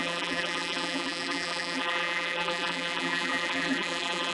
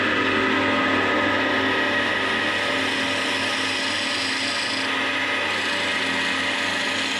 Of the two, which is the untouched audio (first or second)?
second